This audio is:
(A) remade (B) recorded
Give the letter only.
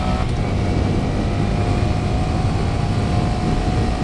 B